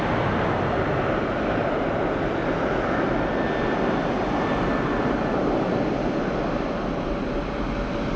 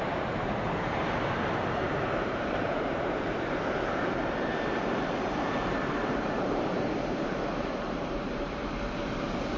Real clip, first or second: first